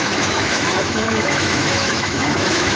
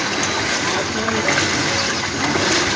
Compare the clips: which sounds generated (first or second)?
first